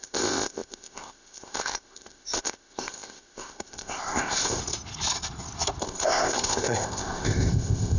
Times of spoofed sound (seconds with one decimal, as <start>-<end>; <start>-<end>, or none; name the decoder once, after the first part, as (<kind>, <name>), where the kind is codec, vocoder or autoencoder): 0.0-4.6 (codec, ZipCodec); 5.8-8.0